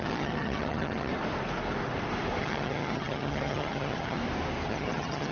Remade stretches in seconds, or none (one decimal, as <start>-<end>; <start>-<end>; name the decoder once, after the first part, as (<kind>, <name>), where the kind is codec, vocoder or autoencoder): 0.0-1.1 (vocoder, HiFi-GAN); 2.4-4.2; 4.7-5.3